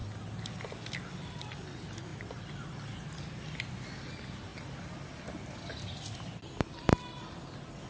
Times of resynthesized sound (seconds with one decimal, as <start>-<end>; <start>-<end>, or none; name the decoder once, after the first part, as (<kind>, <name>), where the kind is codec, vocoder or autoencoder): 0.0-0.6 (vocoder, BigVGAN v2); 2.1-3.2